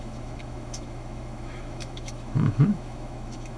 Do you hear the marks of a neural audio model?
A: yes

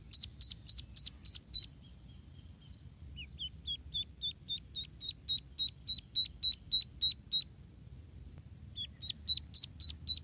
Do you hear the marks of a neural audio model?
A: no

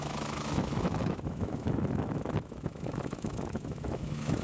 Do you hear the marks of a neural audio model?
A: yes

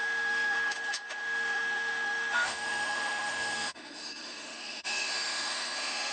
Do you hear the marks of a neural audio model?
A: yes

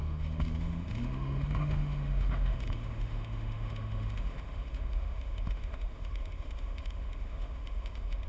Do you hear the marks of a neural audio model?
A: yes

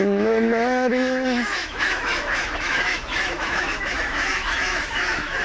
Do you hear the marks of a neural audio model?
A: yes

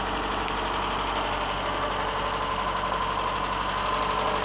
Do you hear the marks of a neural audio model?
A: no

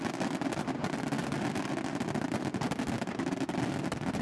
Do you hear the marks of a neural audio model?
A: no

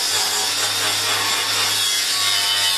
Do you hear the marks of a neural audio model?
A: no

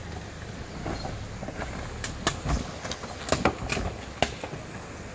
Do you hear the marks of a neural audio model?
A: no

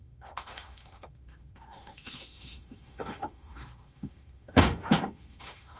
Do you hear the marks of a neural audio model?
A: yes